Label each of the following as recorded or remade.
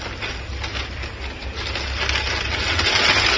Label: recorded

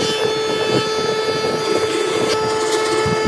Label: recorded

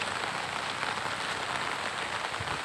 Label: recorded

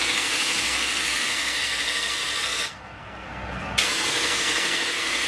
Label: remade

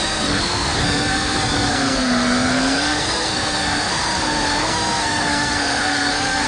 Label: remade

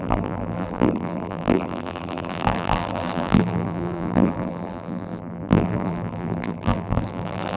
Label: remade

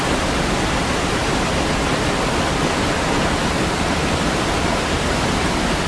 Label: recorded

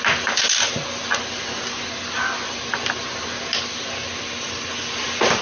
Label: recorded